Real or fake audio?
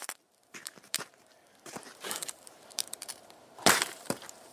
fake